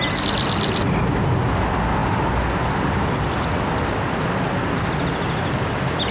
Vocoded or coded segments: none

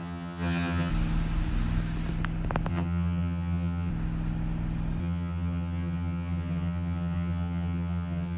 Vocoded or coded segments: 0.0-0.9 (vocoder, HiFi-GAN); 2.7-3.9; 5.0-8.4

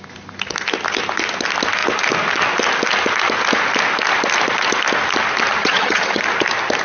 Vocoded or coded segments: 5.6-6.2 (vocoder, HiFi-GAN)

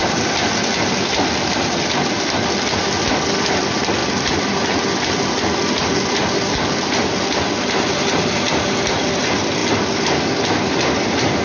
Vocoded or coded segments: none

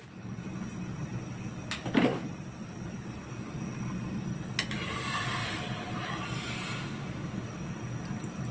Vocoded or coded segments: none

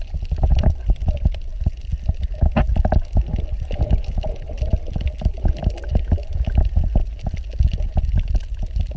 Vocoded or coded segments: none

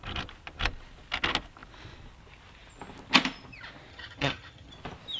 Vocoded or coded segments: 3.9-4.7 (vocoder, HiFi-GAN)

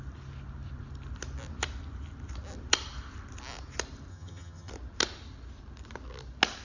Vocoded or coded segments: 4.1-4.7 (vocoder, HiFi-GAN)